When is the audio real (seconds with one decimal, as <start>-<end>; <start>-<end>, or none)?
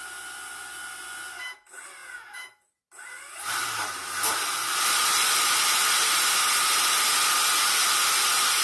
0.0-2.0; 2.8-8.6